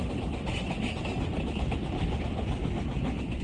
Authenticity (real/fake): real